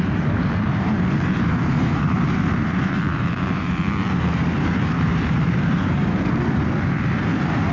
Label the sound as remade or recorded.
remade